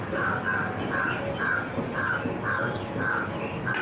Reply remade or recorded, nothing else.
recorded